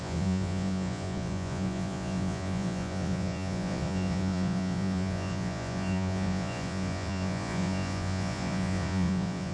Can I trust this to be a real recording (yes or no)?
no